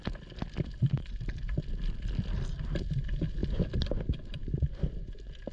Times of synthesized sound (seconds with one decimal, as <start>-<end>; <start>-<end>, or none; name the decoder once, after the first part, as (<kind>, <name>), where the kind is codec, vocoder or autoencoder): none

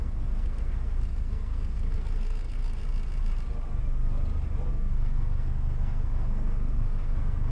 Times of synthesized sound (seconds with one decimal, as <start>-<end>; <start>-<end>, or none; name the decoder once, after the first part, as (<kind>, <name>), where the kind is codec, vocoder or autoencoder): 0.0-2.8 (codec, SNAC); 4.7-7.5